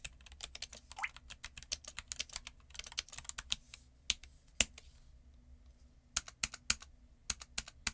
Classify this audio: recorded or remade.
recorded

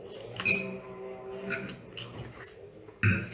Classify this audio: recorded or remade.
recorded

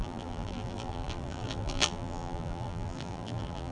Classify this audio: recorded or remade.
remade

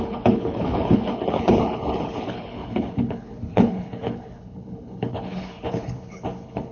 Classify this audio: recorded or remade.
remade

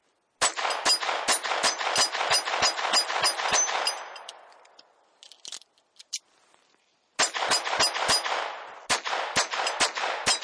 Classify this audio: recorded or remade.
recorded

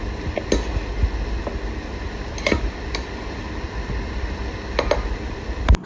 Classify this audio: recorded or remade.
recorded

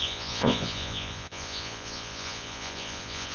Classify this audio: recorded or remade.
remade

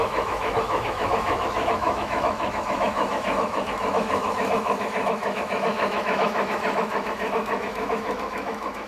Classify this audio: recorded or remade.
remade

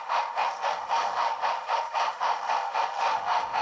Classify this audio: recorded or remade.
remade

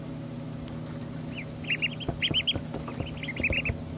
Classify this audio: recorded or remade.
recorded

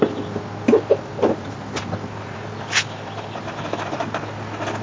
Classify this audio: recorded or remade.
recorded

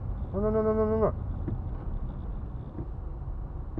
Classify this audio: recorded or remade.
recorded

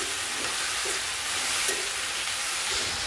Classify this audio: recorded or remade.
recorded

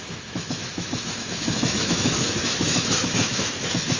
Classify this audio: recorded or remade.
remade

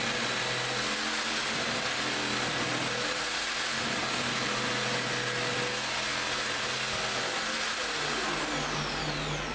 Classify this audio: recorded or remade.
recorded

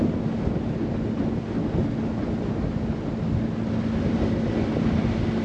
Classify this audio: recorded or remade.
recorded